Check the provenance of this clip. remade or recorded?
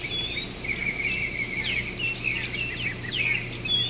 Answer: recorded